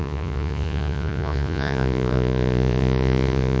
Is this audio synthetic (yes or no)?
yes